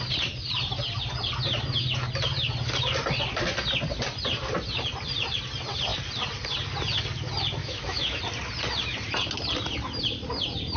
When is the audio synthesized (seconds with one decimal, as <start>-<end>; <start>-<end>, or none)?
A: 7.6-8.2